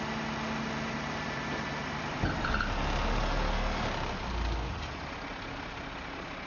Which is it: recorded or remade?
recorded